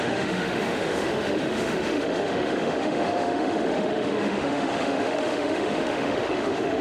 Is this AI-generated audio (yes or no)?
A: yes